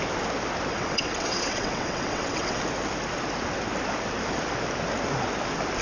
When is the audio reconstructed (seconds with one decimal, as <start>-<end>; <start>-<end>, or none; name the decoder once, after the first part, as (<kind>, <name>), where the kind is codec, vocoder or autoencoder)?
0.7-2.6 (vocoder, WaveNeXt)